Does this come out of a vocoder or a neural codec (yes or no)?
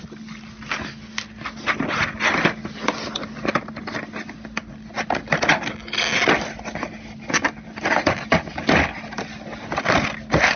no